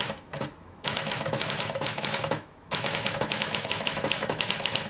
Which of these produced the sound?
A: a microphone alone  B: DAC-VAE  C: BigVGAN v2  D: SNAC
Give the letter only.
B